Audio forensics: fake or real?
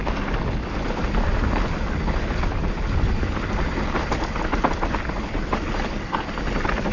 real